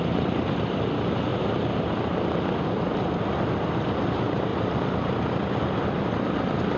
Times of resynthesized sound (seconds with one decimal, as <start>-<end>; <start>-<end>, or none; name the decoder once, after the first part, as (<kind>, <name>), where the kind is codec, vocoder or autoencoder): 1.3-2.9 (vocoder, BigVGAN v2); 4.5-5.2